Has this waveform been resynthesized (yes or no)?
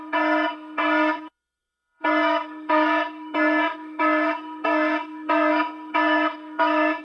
yes